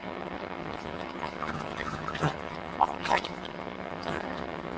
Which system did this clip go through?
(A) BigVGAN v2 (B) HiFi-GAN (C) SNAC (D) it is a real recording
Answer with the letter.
B